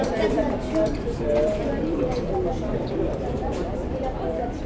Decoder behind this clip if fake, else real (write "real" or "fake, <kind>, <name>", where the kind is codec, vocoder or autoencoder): fake, vocoder, BigVGAN v2